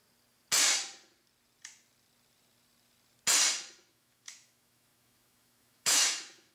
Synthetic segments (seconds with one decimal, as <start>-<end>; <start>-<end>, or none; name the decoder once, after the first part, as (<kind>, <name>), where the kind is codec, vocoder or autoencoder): 3.9-6.5 (autoencoder, DAC-VAE)